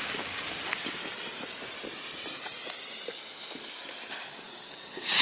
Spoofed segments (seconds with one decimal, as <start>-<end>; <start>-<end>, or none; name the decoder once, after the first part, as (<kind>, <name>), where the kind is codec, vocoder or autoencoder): 0.0-1.0 (codec, DAC); 4.1-5.2